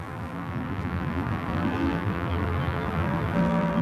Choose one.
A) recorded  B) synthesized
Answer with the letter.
B